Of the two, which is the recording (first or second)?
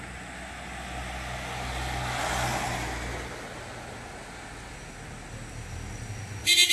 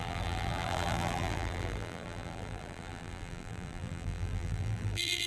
first